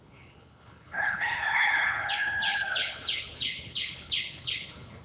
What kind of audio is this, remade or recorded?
remade